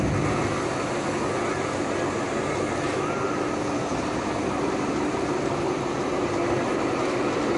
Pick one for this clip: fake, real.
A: real